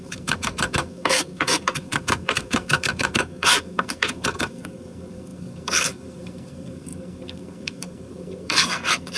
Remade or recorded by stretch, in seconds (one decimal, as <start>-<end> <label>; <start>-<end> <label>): 0.0-9.2 remade